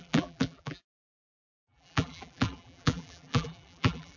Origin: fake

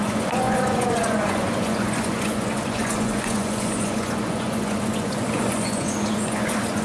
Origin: fake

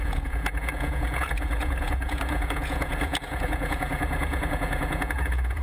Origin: fake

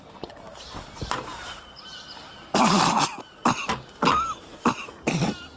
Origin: real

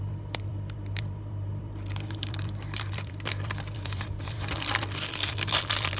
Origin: fake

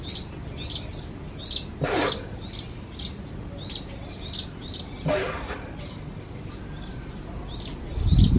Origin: real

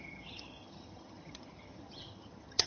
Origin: fake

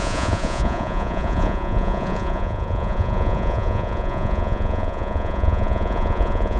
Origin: fake